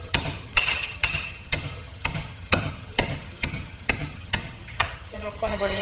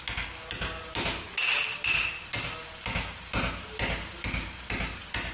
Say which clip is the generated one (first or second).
first